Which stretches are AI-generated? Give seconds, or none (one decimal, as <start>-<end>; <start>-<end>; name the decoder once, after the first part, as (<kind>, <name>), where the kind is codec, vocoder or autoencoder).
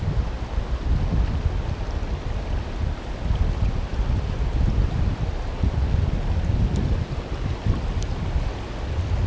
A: none